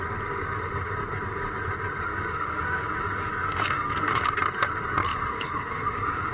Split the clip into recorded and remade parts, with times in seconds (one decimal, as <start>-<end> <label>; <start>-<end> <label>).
0.0-2.1 recorded; 2.1-4.3 remade; 4.3-5.1 recorded; 5.1-6.3 remade